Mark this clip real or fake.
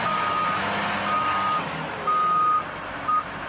real